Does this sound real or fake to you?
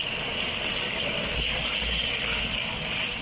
real